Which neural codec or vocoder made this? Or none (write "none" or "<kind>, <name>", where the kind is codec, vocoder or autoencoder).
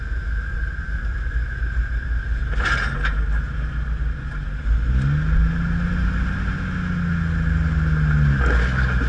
none